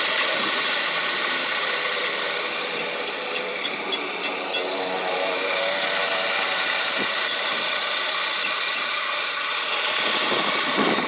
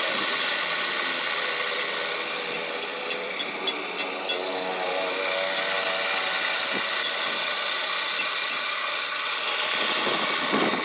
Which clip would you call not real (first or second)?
first